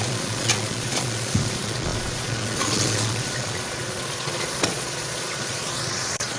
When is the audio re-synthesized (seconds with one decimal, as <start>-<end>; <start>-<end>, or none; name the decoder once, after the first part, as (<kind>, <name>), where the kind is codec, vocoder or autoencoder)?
0.0-6.4 (vocoder, Vocos)